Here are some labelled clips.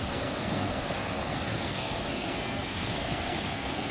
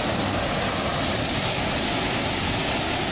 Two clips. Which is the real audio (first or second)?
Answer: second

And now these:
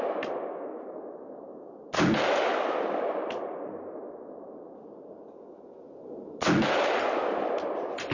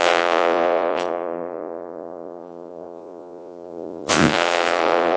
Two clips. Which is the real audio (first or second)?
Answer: first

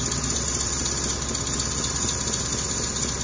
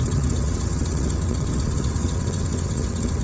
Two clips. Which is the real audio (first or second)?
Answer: first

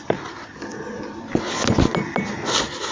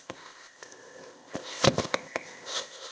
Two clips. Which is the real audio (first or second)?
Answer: first